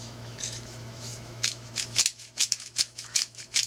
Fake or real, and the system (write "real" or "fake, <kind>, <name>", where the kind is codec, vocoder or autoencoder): fake, autoencoder, DAC-VAE